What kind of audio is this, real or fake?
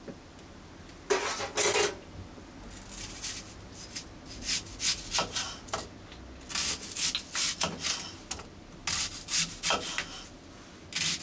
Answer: real